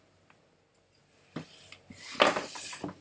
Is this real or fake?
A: real